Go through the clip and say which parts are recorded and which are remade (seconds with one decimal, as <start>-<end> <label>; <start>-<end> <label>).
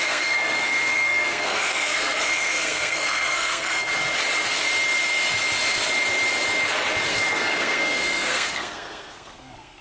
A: 0.0-3.9 remade; 3.9-7.1 recorded; 7.1-9.8 remade